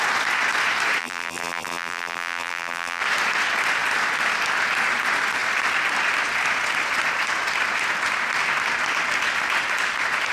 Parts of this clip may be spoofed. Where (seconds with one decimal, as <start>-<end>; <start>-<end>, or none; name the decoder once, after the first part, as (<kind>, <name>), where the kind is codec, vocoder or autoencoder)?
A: 1.0-3.0 (vocoder, BigVGAN v2)